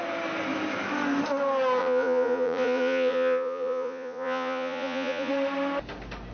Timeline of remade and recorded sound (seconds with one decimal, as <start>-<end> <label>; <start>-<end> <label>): 0.0-1.8 recorded; 1.8-5.3 remade; 5.3-6.3 recorded